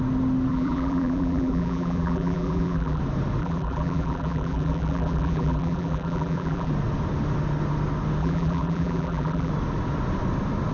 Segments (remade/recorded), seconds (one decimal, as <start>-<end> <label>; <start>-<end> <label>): 0.0-0.5 recorded; 0.5-3.0 remade; 3.0-3.4 recorded; 3.4-6.7 remade; 6.7-8.2 recorded; 8.2-9.5 remade; 9.5-10.7 recorded